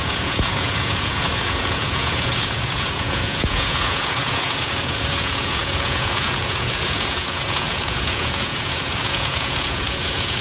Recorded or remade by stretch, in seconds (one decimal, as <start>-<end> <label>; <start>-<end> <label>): 0.0-10.4 remade